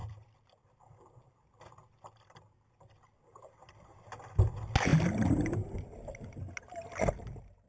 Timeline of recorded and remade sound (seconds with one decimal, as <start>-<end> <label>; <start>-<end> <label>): 0.0-7.7 recorded